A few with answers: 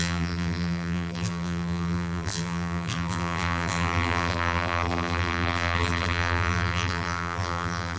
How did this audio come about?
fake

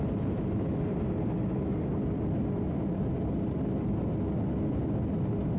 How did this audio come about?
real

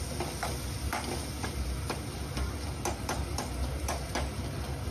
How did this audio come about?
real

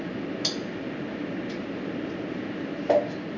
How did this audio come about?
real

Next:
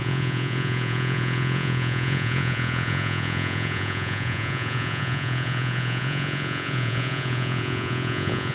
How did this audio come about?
fake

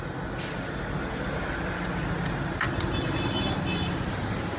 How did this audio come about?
real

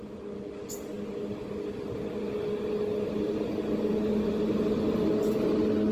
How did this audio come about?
real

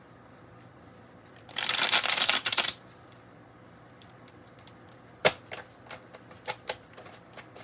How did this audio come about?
fake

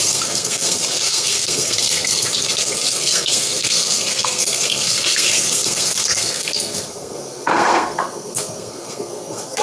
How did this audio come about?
fake